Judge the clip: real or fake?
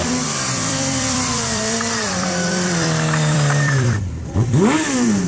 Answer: fake